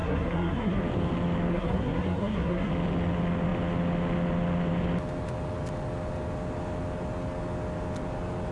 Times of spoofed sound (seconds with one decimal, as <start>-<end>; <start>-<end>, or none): 0.0-0.8; 1.5-2.7